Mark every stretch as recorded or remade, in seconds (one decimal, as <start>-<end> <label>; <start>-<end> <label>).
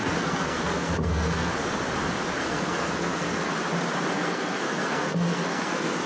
0.0-1.5 remade; 1.5-2.4 recorded; 2.4-3.5 remade; 3.5-4.1 recorded; 4.1-6.1 remade